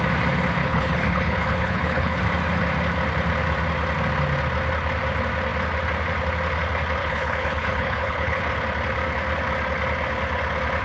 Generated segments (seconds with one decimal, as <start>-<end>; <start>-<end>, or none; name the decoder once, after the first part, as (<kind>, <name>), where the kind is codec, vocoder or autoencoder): 0.6-2.2 (codec, HILCodec); 7.0-8.4